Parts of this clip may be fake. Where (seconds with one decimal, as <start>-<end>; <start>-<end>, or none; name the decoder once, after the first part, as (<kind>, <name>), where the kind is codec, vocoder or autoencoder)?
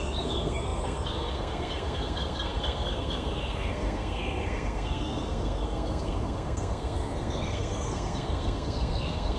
0.0-9.4 (codec, SNAC)